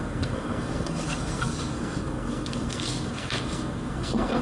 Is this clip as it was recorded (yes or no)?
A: no